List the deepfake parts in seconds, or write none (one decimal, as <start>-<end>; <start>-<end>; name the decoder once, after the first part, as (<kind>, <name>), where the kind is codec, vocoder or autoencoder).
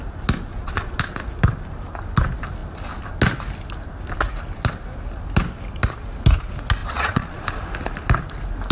0.5-1.0 (vocoder, Vocos); 6.8-7.4